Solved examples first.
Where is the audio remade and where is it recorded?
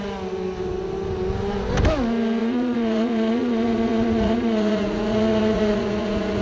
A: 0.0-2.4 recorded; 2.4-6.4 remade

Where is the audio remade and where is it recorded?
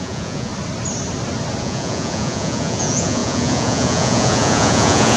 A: 0.0-0.5 remade; 0.5-1.6 recorded; 1.6-5.2 remade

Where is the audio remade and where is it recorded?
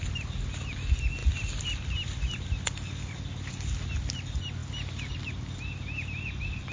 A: 0.0-6.7 recorded